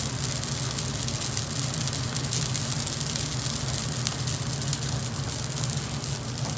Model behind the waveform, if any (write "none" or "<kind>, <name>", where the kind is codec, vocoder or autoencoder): none